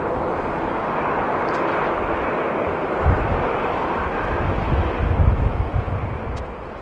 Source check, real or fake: real